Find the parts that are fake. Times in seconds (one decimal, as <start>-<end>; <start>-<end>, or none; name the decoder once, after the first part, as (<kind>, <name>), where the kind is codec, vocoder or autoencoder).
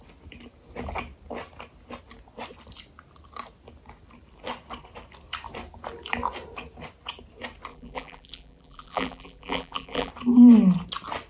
7.7-10.1 (vocoder, BigVGAN v2)